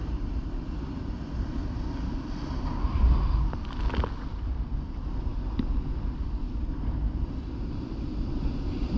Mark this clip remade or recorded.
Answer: recorded